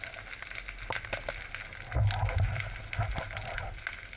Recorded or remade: recorded